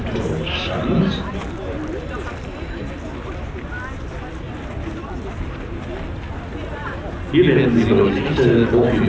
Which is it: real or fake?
real